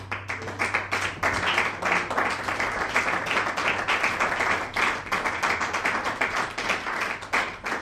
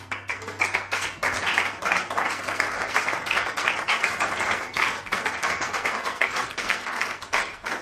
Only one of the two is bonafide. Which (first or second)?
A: first